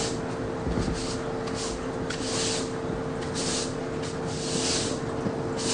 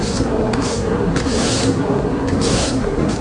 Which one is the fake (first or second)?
second